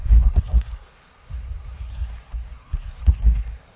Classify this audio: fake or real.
fake